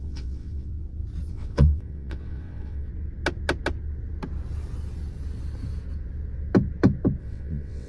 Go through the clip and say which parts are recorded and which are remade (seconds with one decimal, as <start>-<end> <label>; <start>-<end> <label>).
0.0-0.7 remade; 0.7-1.3 recorded; 1.3-2.9 remade; 2.9-7.2 recorded; 7.2-7.9 remade